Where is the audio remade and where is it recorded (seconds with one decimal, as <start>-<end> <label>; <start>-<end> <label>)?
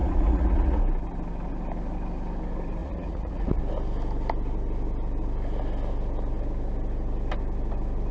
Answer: 0.0-0.8 remade; 0.8-2.8 recorded; 2.8-3.6 remade; 3.6-8.1 recorded